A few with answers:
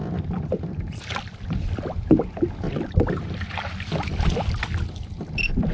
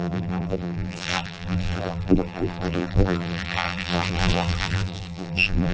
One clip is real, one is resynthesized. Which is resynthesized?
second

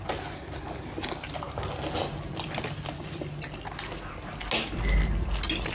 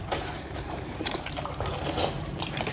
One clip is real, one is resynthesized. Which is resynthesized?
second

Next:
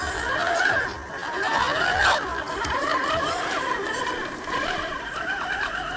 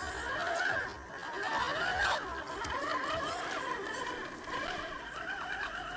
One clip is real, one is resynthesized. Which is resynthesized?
first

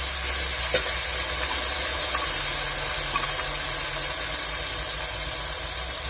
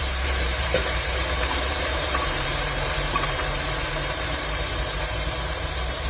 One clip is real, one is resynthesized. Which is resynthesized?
second